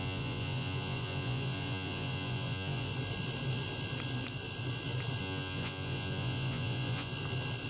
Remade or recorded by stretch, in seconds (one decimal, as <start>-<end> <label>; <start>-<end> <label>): 0.0-2.9 remade; 2.9-5.2 recorded; 5.2-7.1 remade; 7.1-7.7 recorded